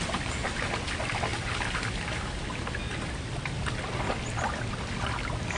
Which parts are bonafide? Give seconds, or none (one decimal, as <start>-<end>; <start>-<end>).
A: 0.0-5.6